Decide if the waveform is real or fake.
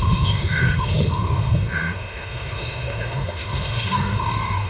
fake